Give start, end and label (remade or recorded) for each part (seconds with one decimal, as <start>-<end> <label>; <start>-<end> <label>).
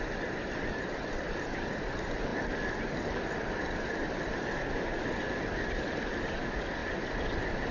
0.0-7.7 recorded